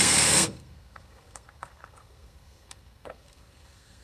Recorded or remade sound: remade